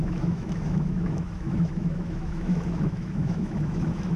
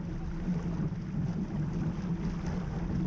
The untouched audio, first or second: second